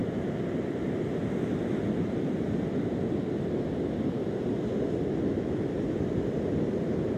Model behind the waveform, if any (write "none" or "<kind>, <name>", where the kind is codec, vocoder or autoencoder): none